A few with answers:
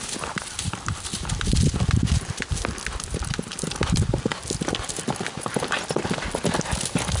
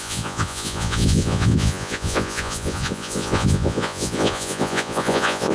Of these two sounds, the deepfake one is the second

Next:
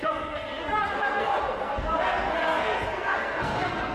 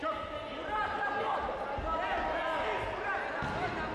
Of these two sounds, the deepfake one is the first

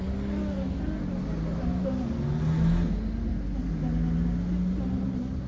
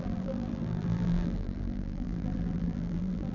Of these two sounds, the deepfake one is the second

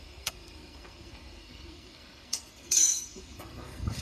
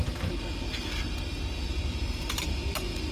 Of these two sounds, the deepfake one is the first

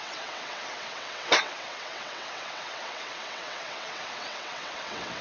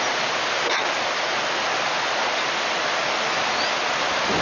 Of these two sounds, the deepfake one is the first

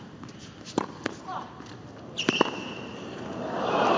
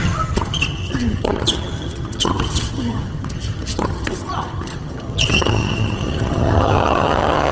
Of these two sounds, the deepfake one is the second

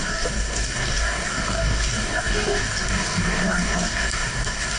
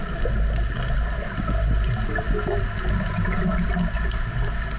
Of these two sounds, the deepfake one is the first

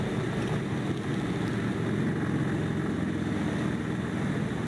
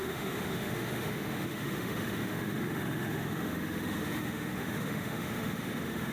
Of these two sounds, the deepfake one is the second